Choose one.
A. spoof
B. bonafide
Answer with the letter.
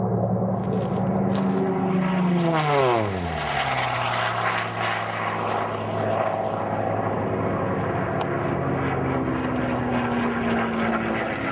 B